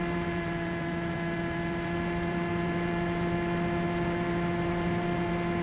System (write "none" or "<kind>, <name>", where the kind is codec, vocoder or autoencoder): vocoder, BigVGAN v2